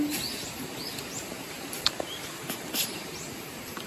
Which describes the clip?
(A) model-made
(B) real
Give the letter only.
A